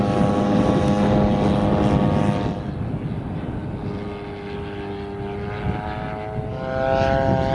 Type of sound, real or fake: real